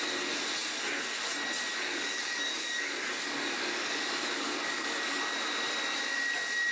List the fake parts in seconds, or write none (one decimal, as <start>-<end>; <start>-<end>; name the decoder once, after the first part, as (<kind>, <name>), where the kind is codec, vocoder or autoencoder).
1.7-5.2 (codec, DAC)